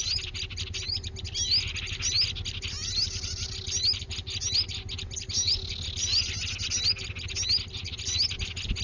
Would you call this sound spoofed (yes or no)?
no